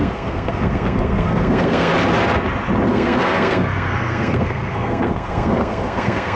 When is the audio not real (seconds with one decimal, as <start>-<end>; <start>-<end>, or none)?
0.0-1.9; 2.9-6.4